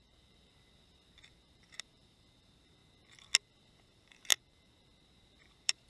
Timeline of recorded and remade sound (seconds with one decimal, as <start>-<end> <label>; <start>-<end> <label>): 0.0-2.8 remade; 2.8-3.8 recorded; 3.8-4.3 remade; 4.3-5.3 recorded; 5.3-5.9 remade